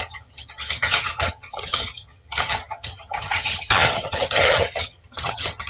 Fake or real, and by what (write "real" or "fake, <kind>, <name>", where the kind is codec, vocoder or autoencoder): fake, vocoder, HiFi-GAN